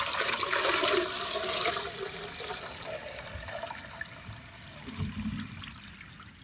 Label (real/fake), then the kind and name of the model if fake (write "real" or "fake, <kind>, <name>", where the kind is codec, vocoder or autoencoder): real